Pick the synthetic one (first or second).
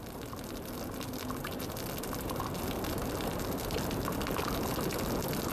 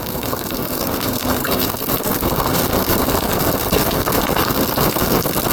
second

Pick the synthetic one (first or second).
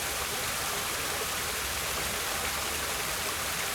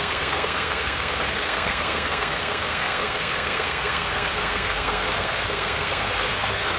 second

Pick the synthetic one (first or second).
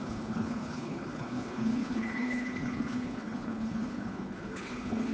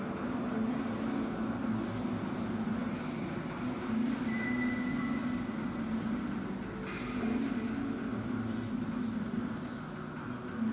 first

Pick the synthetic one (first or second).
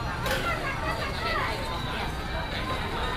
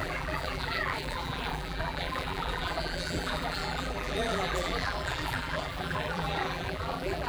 second